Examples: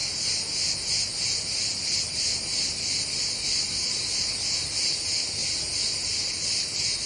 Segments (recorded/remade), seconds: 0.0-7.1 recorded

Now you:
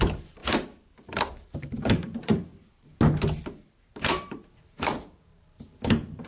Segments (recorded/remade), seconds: 0.0-2.5 remade; 2.5-3.9 recorded; 3.9-6.3 remade

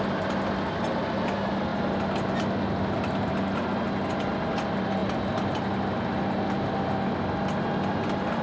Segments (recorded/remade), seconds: 0.0-8.4 recorded

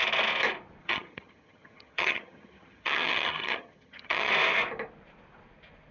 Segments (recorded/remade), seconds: 0.0-0.8 recorded; 0.8-4.3 remade; 4.3-5.9 recorded

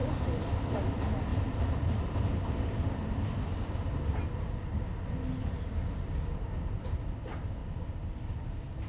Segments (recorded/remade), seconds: 0.0-8.9 recorded

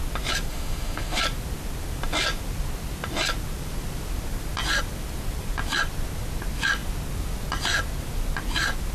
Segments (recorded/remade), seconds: 0.0-0.5 recorded; 0.5-1.2 remade; 1.2-8.9 recorded

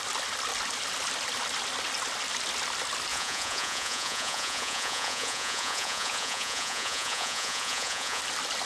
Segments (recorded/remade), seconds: 0.0-3.1 recorded; 3.1-8.2 remade; 8.2-8.7 recorded